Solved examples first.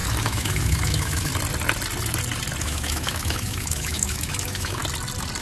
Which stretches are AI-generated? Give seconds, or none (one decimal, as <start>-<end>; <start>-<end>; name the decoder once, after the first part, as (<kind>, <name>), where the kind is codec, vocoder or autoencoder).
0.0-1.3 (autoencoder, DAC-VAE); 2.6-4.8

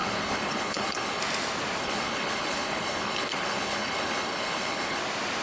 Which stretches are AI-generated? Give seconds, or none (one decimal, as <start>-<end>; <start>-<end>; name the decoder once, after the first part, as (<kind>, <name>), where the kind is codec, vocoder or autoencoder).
0.0-1.2 (codec, HILCodec); 1.8-5.0

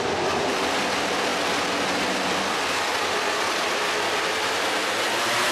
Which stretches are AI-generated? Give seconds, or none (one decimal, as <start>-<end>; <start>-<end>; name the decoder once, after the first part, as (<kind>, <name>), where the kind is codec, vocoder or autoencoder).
none